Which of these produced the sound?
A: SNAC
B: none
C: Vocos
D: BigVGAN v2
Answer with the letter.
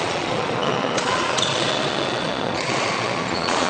C